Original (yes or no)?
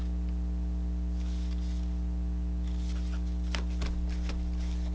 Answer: yes